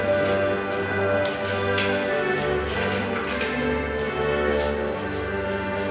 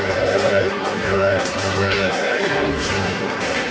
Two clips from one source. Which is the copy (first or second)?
second